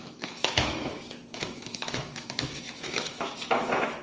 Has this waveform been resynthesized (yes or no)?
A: yes